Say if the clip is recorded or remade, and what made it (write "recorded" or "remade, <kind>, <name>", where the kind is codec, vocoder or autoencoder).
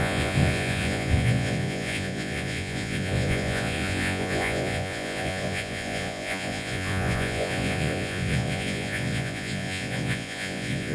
remade, vocoder, Vocos